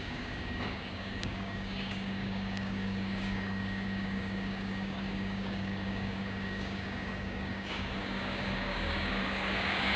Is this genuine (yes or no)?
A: no